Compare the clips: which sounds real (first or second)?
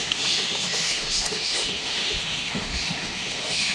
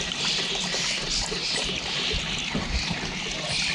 second